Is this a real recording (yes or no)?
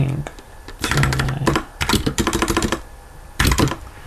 no